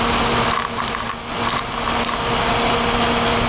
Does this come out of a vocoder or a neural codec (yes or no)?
no